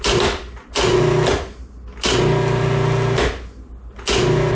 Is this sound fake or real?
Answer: real